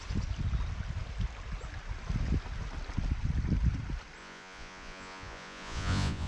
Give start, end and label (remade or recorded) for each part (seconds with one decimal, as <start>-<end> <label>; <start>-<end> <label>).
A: 0.0-4.2 recorded; 4.2-6.3 remade